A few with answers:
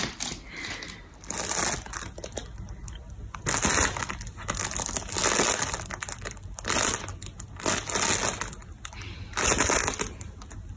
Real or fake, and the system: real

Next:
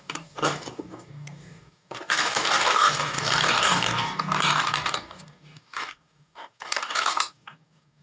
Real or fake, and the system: fake, codec, DAC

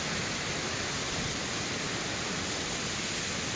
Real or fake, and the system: real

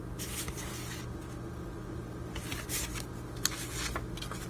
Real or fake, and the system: real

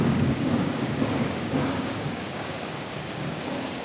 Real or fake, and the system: fake, codec, DAC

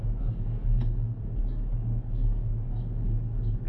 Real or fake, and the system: fake, codec, DAC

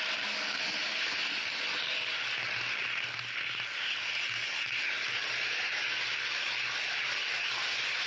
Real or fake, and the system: real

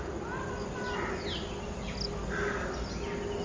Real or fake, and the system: real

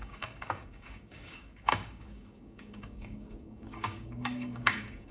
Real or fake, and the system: fake, codec, DAC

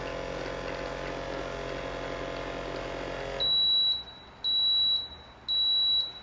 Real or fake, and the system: real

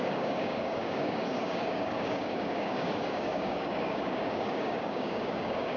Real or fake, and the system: fake, codec, DAC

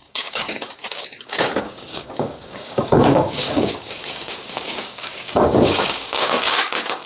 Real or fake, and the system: fake, codec, DAC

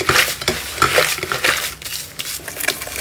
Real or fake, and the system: real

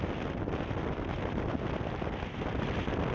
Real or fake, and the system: real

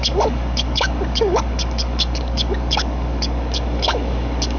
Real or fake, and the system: fake, codec, DAC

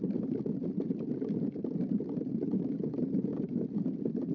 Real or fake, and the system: real